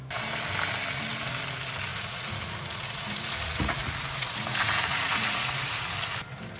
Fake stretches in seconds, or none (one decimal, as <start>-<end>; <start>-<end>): 1.9-5.9